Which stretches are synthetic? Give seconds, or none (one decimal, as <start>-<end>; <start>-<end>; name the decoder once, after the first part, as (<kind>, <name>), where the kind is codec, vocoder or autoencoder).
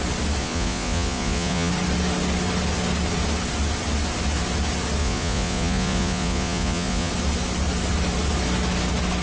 0.4-1.7 (vocoder, Vocos); 5.0-7.1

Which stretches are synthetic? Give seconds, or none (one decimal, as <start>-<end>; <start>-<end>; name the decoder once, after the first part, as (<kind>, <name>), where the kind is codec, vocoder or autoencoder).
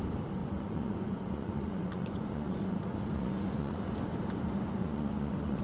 0.4-3.8 (vocoder, Vocos); 4.8-5.6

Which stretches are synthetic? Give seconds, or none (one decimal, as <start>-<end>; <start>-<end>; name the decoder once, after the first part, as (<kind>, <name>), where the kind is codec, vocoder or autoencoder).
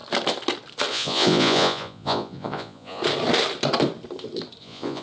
0.9-3.0 (vocoder, Vocos); 4.6-5.0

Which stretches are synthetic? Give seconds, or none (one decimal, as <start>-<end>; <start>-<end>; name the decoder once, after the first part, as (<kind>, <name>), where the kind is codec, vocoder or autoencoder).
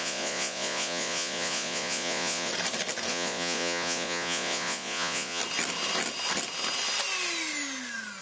0.0-2.5 (vocoder, Vocos); 3.1-5.4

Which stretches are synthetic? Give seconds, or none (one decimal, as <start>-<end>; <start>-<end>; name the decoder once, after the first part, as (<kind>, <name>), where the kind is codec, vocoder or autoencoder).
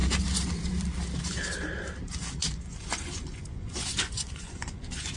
2.1-5.2 (vocoder, Vocos)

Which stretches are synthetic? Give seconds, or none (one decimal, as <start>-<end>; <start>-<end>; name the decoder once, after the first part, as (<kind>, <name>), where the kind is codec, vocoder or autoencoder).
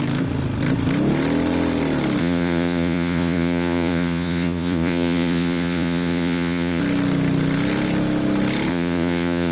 2.2-6.8 (vocoder, Vocos); 8.7-9.5